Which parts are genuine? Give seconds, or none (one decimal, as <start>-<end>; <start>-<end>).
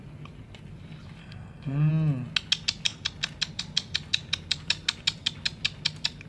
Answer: 0.0-1.2; 1.9-6.3